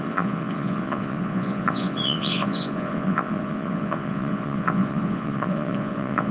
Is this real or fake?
fake